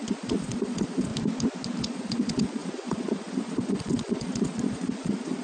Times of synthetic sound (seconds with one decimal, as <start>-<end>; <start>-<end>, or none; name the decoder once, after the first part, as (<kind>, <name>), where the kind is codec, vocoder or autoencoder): 0.0-1.1 (vocoder, Vocos); 1.8-5.4